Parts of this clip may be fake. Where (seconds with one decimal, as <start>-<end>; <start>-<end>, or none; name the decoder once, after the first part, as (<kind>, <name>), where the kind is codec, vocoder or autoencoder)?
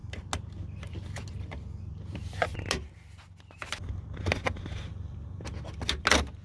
none